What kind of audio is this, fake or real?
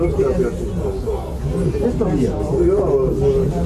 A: real